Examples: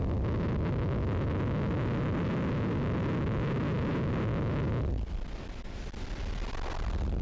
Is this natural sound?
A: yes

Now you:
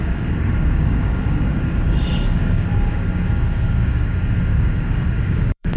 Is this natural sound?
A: no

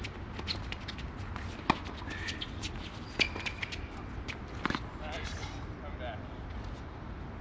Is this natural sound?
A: yes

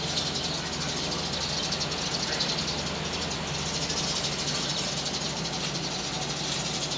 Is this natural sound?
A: yes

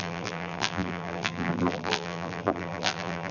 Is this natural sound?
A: no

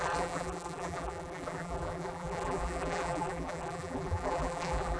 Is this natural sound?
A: no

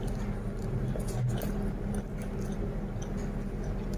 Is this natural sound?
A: yes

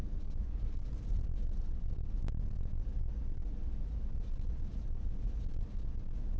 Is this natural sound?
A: yes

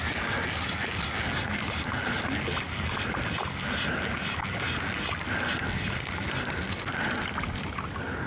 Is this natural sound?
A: yes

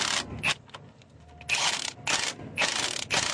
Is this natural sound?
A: yes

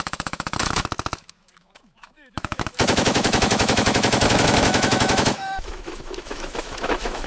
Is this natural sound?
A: no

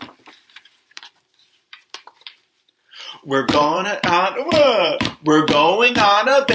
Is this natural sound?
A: no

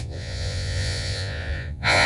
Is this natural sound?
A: no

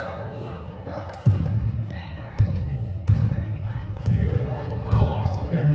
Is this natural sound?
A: no